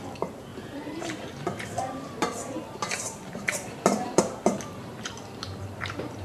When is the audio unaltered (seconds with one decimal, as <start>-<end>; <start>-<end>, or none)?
none